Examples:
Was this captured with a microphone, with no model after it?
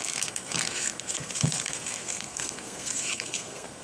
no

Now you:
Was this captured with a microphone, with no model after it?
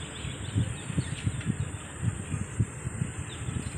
yes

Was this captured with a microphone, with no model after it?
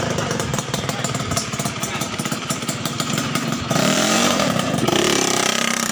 no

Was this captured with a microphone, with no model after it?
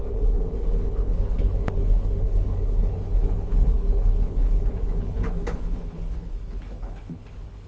no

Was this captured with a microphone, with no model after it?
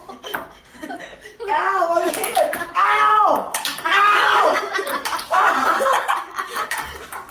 no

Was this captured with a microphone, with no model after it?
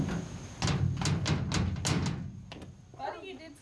yes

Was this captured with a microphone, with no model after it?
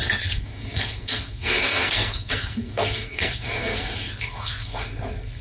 no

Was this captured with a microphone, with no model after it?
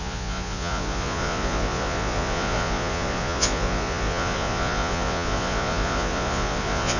no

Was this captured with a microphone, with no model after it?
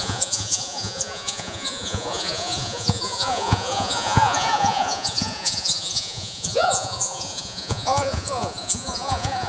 no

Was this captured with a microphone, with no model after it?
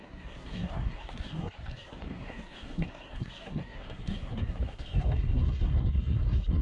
no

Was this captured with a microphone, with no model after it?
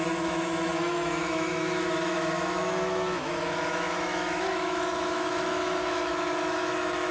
no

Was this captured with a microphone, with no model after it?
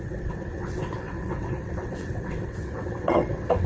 no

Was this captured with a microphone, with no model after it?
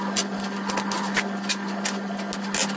yes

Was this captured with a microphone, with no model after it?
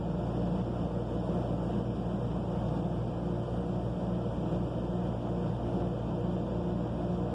yes